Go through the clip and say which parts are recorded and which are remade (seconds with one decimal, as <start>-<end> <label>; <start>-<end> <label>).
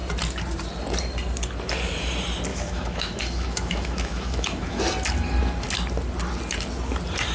0.0-2.5 recorded; 2.5-4.8 remade; 4.8-7.3 recorded